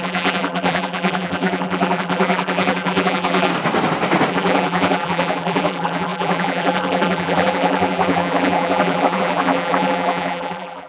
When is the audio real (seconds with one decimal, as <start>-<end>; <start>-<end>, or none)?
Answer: 3.5-4.3